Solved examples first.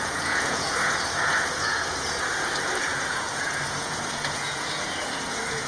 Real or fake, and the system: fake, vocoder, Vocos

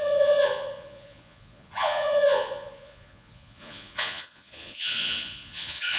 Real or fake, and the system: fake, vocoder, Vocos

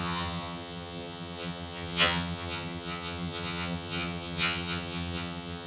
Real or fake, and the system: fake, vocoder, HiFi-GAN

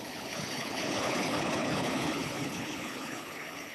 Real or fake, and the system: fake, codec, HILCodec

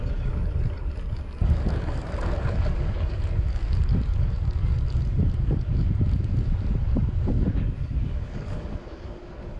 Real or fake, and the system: fake, codec, DAC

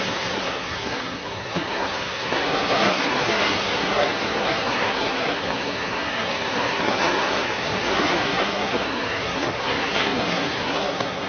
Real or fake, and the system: fake, codec, SNAC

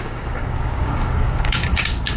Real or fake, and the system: fake, codec, DAC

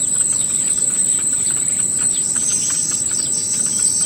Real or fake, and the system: fake, vocoder, BigVGAN v2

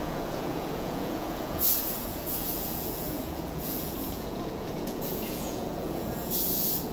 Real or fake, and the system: fake, vocoder, Vocos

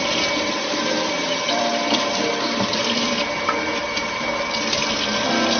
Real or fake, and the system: fake, vocoder, BigVGAN v2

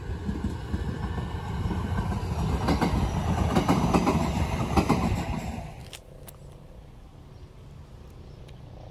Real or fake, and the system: real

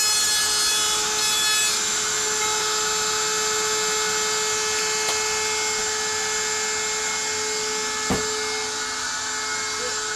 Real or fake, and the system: real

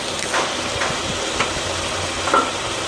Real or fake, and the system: real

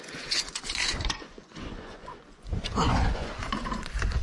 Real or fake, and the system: fake, vocoder, Vocos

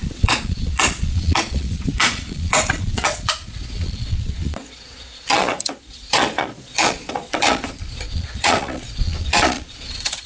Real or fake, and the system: fake, vocoder, Vocos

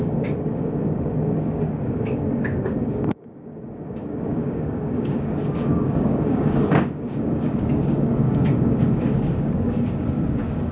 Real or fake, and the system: fake, codec, DAC